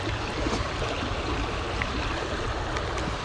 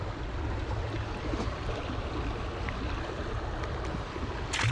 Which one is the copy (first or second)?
first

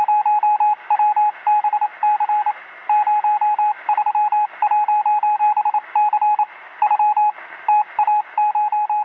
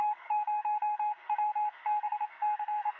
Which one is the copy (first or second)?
second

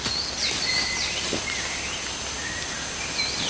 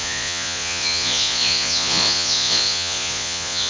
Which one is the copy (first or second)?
second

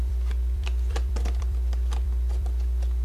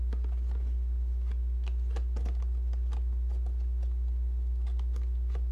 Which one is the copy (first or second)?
first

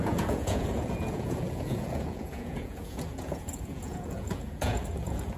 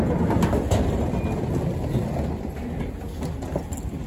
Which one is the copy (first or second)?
first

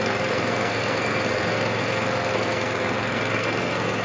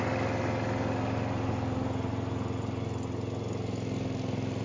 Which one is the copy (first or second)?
first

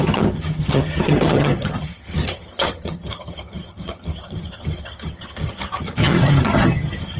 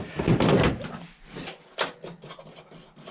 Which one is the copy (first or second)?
first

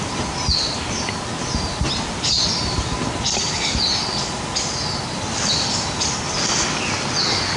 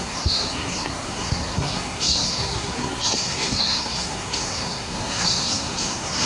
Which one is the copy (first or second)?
second